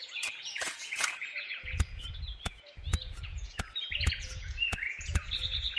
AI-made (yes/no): yes